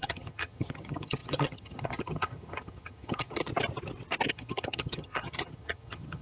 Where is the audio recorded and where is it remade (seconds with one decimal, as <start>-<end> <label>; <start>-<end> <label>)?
0.0-3.5 remade; 3.5-4.3 recorded; 4.3-6.2 remade